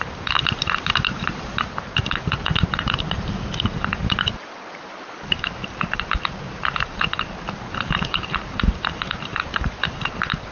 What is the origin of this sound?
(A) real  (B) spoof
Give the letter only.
B